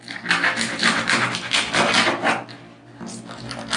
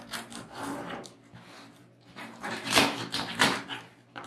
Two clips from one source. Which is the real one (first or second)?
first